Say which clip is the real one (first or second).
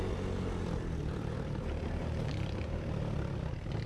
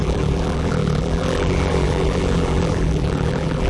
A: first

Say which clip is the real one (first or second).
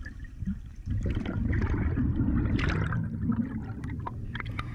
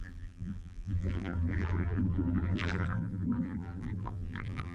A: first